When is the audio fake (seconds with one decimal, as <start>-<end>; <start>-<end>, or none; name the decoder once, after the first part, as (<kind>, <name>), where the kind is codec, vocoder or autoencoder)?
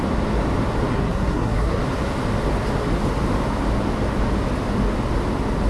0.9-1.8 (codec, SNAC)